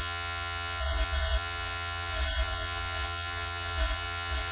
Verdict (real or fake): fake